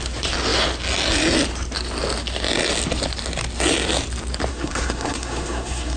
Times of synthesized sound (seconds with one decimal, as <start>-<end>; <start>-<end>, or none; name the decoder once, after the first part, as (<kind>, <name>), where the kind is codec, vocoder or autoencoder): 4.5-6.0 (codec, SNAC)